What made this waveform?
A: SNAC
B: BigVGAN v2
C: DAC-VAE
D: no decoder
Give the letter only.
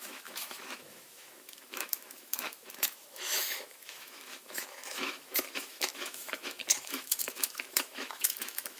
C